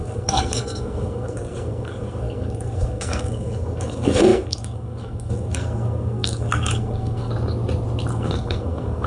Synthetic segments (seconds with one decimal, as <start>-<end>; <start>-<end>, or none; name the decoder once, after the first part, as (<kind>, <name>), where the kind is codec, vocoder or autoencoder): 0.0-7.3 (codec, SNAC); 8.1-9.1